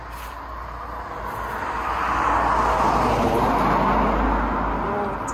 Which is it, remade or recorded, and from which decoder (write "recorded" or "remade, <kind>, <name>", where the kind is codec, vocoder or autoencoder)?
recorded